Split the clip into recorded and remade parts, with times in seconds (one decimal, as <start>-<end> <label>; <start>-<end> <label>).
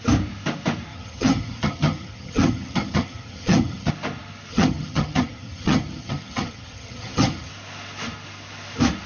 0.0-0.9 recorded; 0.9-3.9 remade; 3.9-4.5 recorded; 4.5-7.5 remade; 7.5-9.1 recorded